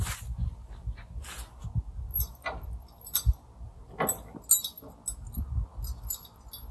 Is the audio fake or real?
real